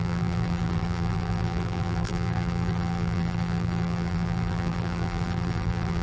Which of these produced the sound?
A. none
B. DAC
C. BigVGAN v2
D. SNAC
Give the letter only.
C